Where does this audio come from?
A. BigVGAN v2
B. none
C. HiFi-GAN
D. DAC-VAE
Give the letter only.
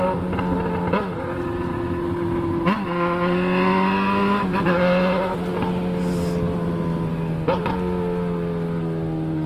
B